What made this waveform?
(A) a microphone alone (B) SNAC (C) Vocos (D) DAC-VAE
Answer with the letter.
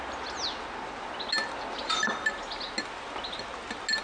A